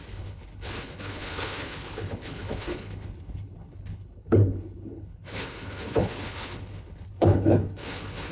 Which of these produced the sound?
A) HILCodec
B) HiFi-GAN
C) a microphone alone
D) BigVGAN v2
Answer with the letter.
A